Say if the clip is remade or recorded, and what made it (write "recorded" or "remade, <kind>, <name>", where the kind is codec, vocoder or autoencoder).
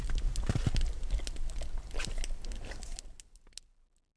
recorded